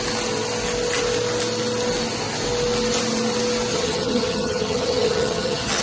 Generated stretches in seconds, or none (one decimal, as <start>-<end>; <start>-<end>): 3.7-5.8